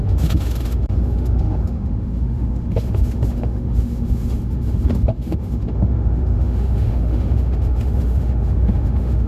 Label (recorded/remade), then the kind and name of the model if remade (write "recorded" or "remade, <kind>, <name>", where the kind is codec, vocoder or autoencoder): remade, autoencoder, DAC-VAE